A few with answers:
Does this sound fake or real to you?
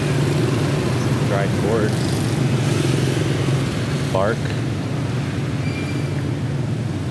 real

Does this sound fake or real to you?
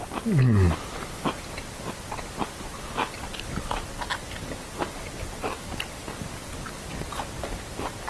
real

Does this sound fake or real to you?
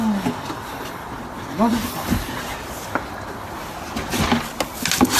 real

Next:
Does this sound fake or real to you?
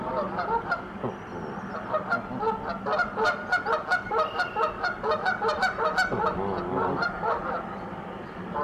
real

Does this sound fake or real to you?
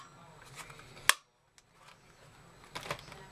real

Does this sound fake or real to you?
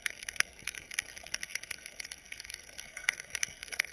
fake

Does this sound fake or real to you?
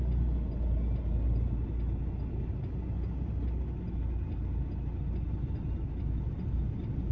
real